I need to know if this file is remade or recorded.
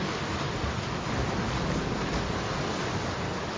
recorded